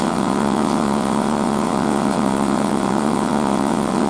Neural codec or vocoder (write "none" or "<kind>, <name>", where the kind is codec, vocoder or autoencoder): vocoder, WaveNeXt